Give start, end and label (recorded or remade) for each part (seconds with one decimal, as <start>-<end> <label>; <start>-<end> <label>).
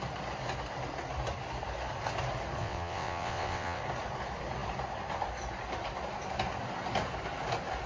0.0-2.6 recorded; 2.6-3.8 remade; 3.8-7.9 recorded